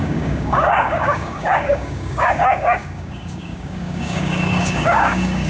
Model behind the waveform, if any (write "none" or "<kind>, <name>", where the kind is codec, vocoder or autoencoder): codec, DAC